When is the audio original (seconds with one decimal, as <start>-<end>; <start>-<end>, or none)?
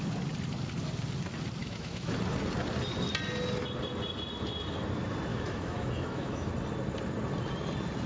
0.0-1.6; 2.1-5.3; 6.5-8.1